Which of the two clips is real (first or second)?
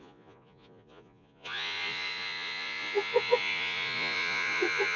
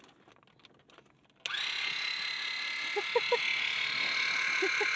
second